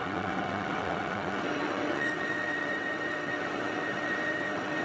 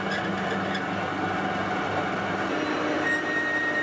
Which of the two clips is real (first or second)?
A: second